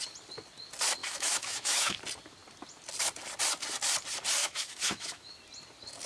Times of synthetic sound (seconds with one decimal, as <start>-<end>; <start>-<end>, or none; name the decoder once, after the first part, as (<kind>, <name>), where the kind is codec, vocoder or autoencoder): 1.0-2.0 (autoencoder, DAC-VAE); 4.4-5.4

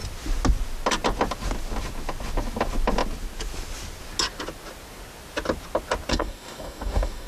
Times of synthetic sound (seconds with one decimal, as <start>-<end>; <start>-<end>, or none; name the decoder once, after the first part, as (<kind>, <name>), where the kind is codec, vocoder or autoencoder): 6.1-7.3 (codec, DAC)

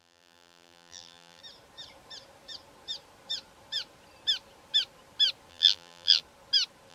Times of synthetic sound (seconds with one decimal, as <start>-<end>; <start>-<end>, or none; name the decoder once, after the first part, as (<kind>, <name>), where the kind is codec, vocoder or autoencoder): 0.0-1.4 (vocoder, BigVGAN v2); 5.5-6.2

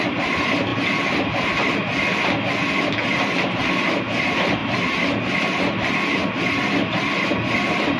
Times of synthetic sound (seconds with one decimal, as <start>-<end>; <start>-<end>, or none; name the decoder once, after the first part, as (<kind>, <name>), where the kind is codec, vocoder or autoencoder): none

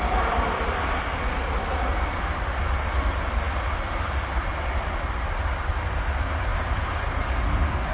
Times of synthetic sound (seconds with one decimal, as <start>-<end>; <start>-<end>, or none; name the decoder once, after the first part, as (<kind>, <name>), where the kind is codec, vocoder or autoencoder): none

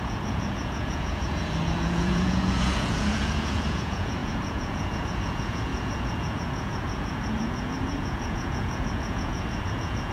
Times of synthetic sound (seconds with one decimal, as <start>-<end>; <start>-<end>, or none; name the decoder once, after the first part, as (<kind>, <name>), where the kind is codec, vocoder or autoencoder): 0.0-10.1 (vocoder, Vocos)